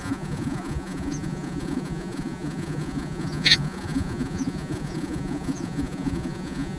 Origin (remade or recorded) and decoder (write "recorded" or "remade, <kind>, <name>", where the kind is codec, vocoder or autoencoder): remade, vocoder, Vocos